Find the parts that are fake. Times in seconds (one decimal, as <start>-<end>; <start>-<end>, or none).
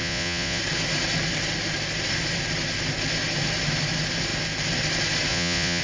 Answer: 0.0-0.6; 5.3-5.8